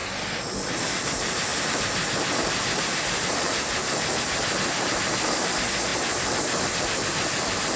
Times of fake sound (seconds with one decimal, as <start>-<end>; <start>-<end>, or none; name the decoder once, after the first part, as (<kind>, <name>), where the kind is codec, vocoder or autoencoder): none